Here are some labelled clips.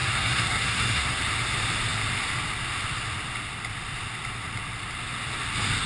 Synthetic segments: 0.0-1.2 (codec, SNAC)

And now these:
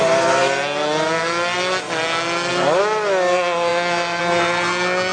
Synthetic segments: none

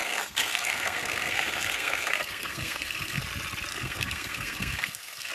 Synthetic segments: 0.0-3.2 (codec, SNAC); 3.7-5.3

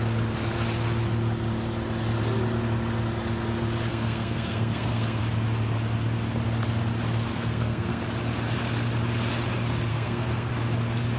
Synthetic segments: 3.9-5.2 (codec, SNAC); 7.3-8.0; 9.9-10.5